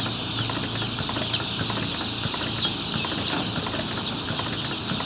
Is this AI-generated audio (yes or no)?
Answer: no